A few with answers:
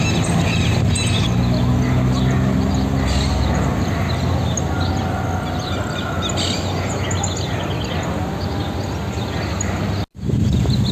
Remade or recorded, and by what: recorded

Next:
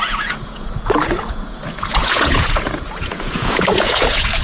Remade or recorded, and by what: remade, vocoder, Vocos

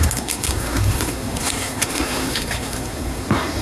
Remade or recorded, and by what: remade, codec, SNAC